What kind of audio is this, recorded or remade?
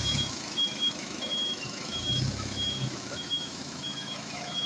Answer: remade